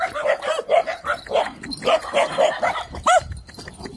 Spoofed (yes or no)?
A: no